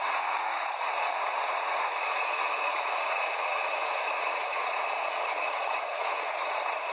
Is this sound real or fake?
fake